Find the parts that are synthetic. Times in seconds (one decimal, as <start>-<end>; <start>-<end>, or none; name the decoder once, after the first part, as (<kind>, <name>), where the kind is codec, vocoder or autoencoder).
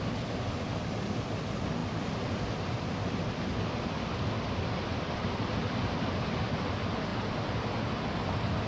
none